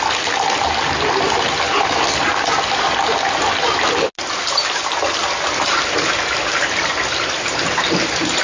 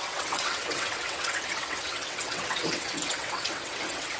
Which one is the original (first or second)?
first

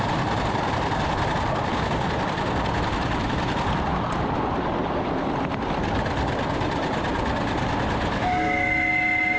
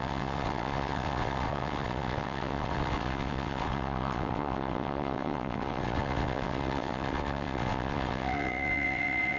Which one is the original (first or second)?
first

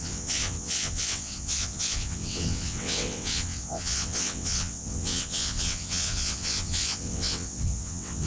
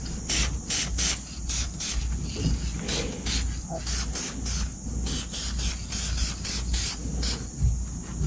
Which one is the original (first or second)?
second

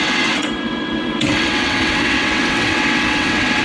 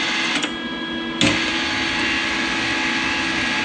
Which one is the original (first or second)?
second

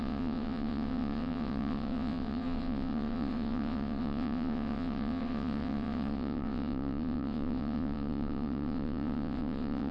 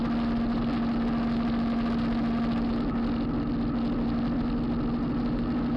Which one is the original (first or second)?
second